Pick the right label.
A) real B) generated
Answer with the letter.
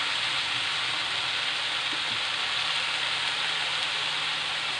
A